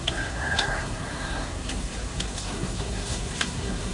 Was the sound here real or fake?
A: fake